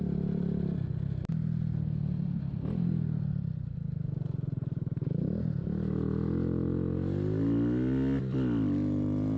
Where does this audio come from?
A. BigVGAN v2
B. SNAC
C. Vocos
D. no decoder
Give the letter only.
D